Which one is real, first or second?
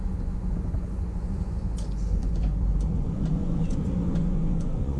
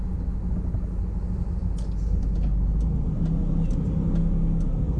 second